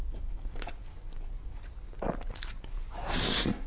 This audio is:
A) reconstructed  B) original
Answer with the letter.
B